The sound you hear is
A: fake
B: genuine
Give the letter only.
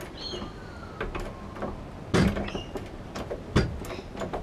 B